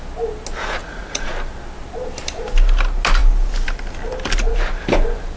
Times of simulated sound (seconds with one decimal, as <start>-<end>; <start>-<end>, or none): 0.8-1.3